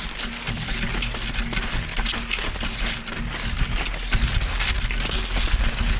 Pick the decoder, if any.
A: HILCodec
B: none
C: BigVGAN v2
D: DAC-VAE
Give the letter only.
B